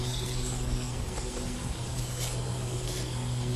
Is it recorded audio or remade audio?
remade